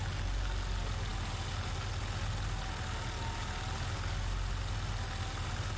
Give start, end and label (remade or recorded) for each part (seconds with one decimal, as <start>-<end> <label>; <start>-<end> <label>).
0.0-5.8 recorded